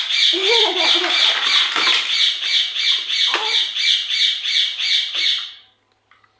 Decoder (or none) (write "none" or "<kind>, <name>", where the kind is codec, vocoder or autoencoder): none